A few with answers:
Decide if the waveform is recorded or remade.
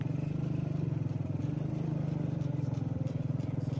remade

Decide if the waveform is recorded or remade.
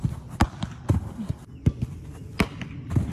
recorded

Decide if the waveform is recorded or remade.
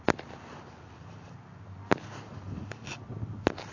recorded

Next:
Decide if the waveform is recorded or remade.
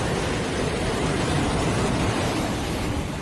remade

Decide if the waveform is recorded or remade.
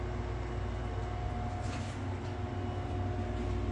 recorded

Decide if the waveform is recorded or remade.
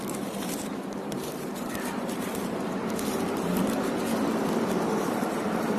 remade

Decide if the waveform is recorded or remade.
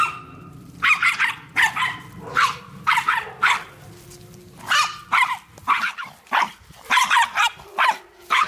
recorded